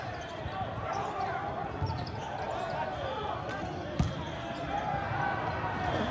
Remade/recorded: recorded